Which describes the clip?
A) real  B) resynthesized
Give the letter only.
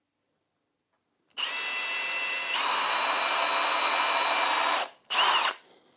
A